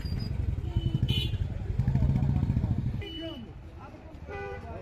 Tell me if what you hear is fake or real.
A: fake